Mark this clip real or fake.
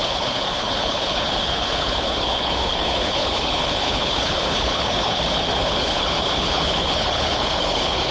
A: fake